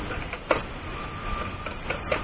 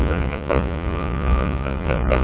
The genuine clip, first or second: first